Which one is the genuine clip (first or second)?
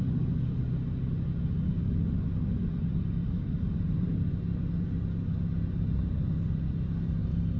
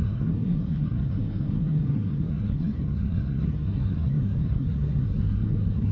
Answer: first